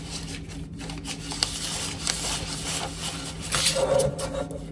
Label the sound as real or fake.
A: real